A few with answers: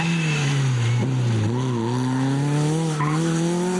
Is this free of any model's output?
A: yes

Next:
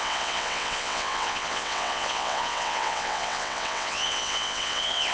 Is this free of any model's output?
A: no